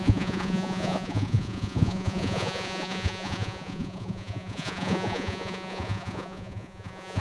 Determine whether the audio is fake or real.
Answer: fake